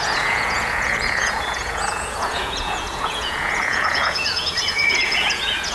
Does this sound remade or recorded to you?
remade